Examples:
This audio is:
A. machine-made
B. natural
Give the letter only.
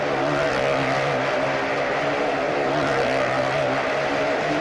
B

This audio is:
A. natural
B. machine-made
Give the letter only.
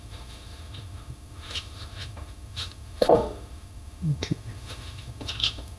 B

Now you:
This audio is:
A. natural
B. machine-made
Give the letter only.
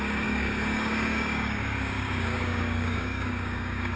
B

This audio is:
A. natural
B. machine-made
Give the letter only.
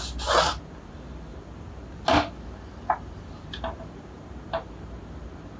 A